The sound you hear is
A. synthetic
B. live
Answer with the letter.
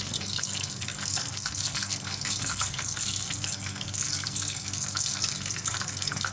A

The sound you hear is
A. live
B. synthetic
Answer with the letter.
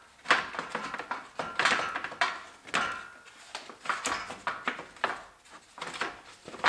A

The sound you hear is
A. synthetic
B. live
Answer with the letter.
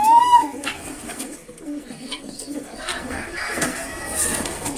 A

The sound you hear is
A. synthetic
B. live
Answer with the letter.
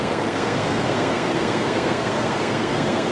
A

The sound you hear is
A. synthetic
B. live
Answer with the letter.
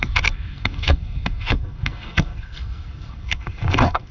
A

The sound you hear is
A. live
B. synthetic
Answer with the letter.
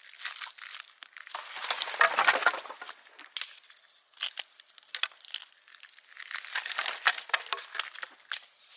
A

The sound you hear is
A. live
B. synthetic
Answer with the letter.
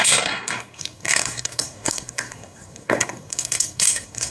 B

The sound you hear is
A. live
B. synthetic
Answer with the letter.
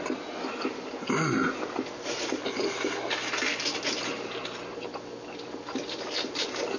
A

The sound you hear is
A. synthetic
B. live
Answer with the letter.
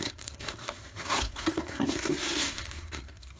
A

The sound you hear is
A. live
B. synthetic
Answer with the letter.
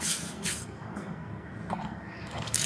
B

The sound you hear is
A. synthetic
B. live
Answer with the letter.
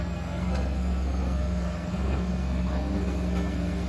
A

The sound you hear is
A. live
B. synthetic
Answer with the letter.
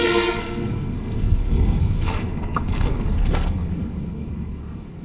B